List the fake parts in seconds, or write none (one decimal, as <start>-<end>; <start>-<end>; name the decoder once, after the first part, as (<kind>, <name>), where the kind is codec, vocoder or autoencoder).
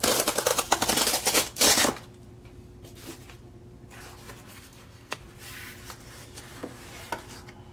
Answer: 4.5-5.2 (codec, SNAC)